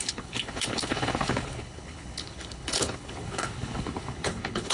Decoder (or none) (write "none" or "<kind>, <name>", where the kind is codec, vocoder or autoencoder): codec, HILCodec